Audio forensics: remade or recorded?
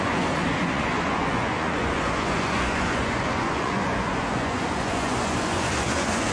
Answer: remade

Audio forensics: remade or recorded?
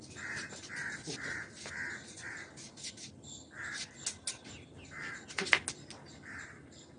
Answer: recorded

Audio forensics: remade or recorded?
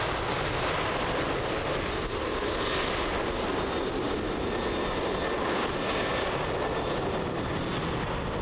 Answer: recorded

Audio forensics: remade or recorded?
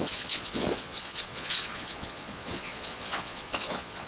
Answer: remade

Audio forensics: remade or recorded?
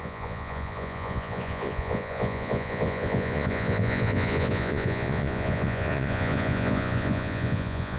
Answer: remade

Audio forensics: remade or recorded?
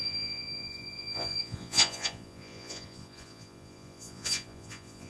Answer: remade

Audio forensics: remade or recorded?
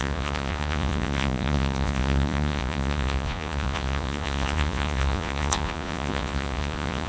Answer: remade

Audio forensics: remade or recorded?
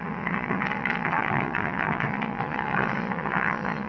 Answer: remade